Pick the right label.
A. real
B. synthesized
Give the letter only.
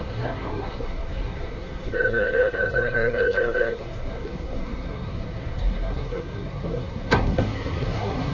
B